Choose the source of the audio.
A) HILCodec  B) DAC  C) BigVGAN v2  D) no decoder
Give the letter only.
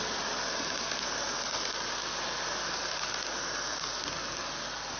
D